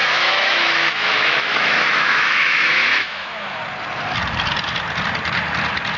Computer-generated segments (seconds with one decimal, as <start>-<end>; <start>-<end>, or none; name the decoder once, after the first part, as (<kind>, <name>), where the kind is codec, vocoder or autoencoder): 0.0-3.6 (autoencoder, DAC-VAE)